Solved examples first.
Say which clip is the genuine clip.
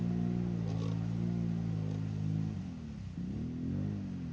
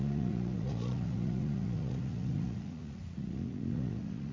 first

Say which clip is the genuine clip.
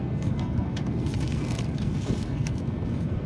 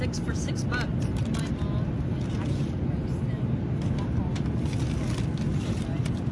second